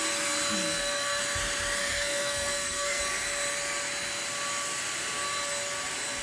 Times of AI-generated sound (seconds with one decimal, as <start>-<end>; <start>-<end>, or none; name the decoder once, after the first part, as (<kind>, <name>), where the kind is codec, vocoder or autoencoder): 0.6-1.2 (codec, SNAC); 1.8-3.0